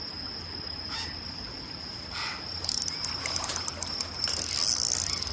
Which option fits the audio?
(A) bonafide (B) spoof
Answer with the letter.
A